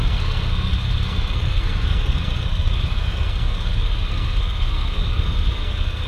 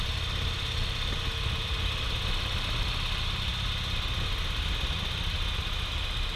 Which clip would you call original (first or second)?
second